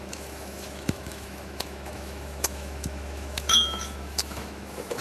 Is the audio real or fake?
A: fake